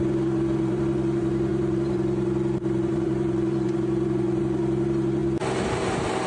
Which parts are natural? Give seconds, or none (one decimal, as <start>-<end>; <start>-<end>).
5.2-5.7